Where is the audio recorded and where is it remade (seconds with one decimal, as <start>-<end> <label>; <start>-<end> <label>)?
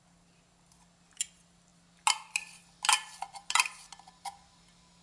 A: 0.0-5.0 recorded